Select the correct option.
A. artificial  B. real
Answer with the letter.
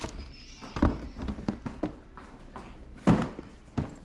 B